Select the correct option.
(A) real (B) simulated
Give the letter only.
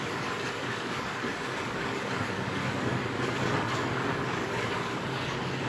B